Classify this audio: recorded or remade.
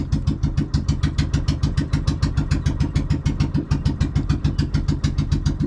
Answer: recorded